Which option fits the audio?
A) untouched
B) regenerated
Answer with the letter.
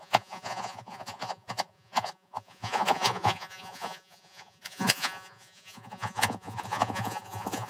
B